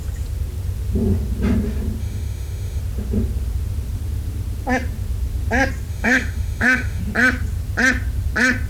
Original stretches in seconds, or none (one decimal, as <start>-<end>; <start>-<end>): 0.0-2.0; 2.8-5.9; 7.0-8.7